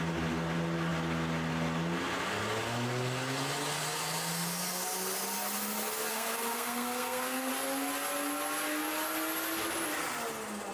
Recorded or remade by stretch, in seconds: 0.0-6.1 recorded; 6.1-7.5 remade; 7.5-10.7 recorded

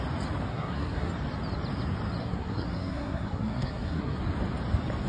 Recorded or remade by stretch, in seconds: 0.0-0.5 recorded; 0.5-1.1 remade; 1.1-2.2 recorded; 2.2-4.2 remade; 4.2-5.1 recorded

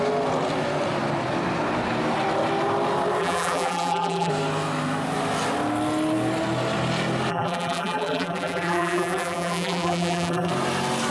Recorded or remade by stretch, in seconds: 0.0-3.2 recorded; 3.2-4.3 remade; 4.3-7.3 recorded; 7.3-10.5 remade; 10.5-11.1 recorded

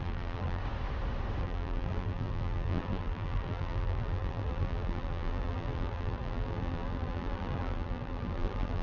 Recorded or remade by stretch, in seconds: 0.0-0.6 remade; 0.6-1.4 recorded; 1.4-8.8 remade

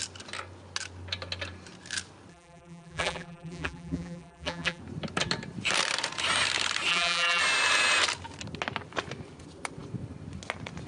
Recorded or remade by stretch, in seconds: 0.0-2.3 recorded; 2.3-4.8 remade; 4.8-6.9 recorded; 6.9-7.4 remade; 7.4-10.9 recorded

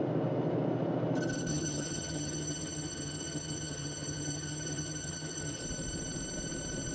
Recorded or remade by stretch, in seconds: 0.0-1.5 recorded; 1.5-5.6 remade; 5.6-6.9 recorded